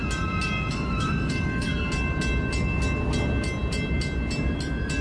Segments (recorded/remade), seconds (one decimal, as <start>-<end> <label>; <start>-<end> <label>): 0.0-0.7 recorded; 0.7-1.7 remade; 1.7-5.0 recorded